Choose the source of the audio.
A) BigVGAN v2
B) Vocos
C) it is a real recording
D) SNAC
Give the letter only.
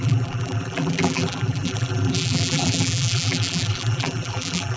A